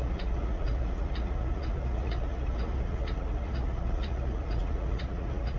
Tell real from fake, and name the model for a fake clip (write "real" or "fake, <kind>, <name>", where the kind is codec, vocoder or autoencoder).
fake, vocoder, Vocos